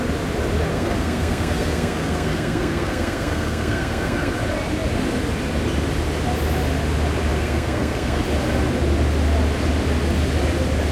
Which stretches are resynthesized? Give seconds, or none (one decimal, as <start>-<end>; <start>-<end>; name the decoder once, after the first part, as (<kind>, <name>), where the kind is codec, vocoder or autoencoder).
0.7-4.3 (codec, SNAC); 7.3-8.2